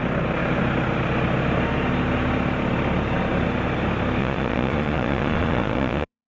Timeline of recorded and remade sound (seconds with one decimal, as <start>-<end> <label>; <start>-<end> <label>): 0.0-4.2 recorded; 4.2-6.3 remade